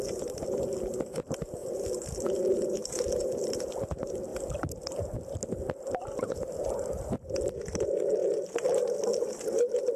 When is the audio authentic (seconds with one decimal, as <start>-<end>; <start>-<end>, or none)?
0.0-10.0